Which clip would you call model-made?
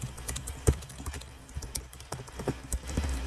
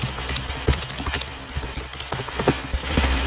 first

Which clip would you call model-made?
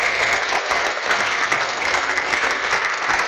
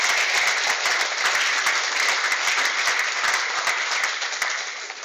first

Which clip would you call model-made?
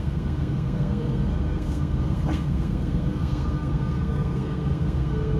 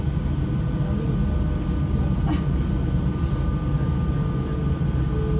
first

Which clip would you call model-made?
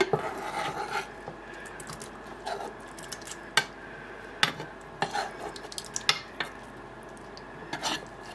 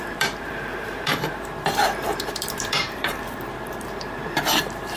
second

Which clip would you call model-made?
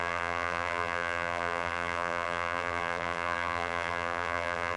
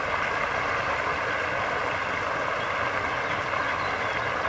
first